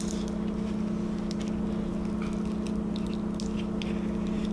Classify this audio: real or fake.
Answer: real